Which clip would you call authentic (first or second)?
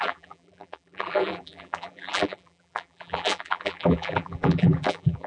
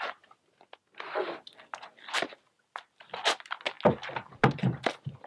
second